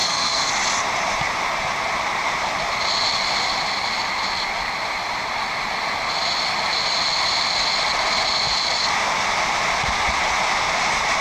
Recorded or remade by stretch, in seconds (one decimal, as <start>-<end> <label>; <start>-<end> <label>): 0.0-0.5 remade; 0.5-11.2 recorded